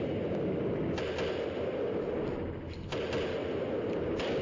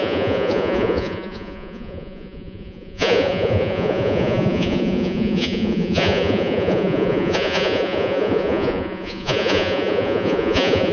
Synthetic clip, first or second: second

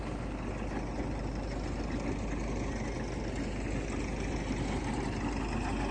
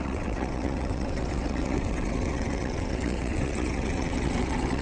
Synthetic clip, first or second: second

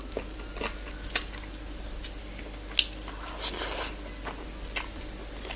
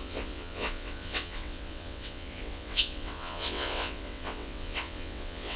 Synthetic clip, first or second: second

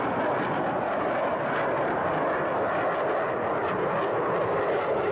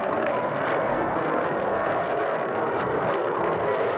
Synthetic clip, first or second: second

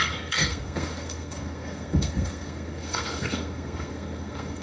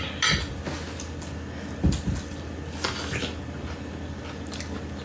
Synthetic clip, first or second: first